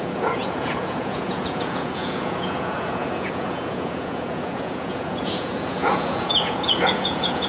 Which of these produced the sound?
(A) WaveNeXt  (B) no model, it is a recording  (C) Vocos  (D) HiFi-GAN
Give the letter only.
C